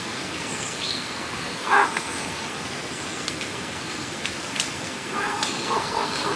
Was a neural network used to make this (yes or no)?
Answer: yes